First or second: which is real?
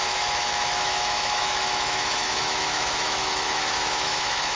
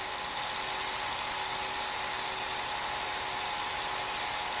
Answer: second